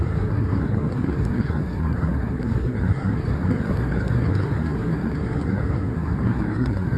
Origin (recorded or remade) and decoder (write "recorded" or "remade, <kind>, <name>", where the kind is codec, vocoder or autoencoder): remade, codec, SNAC